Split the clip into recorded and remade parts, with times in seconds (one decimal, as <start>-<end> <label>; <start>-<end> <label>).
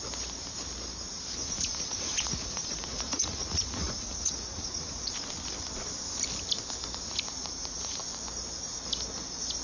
0.0-1.4 recorded; 1.4-5.1 remade; 5.1-7.4 recorded; 7.4-8.0 remade; 8.0-9.6 recorded